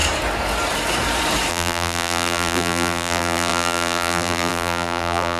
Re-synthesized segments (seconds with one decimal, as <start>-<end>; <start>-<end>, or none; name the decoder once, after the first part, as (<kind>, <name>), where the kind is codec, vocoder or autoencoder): 1.5-5.4 (vocoder, BigVGAN v2)